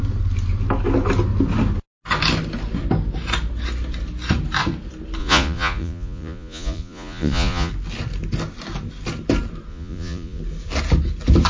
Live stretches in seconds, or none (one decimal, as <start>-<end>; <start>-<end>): 0.0-5.2; 7.7-9.7; 10.4-11.5